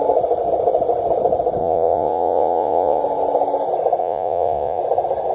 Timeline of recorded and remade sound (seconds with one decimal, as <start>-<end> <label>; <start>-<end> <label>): 0.0-1.6 recorded; 1.6-3.0 remade; 3.0-4.0 recorded; 4.0-4.8 remade; 4.8-5.3 recorded